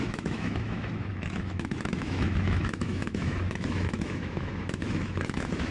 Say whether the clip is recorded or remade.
remade